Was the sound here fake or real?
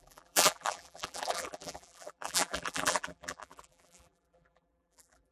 fake